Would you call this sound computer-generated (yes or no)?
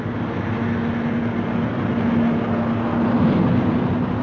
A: no